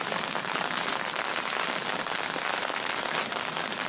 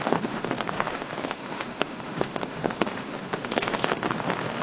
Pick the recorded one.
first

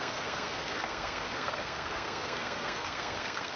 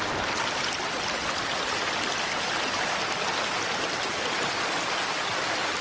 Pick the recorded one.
second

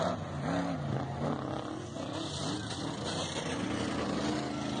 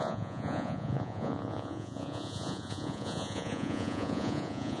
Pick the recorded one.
first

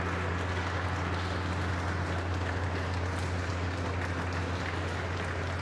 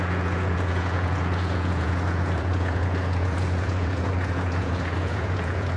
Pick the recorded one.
first